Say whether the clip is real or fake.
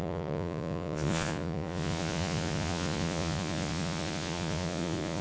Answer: fake